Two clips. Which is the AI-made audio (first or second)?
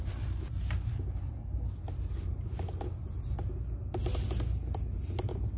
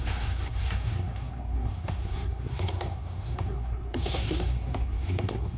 second